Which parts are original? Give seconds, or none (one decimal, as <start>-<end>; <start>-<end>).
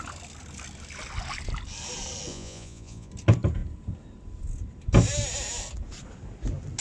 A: 0.0-2.3; 3.1-6.8